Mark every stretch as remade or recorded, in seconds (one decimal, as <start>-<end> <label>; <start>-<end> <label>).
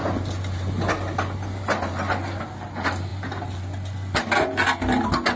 0.0-5.4 recorded